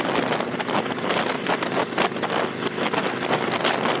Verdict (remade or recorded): recorded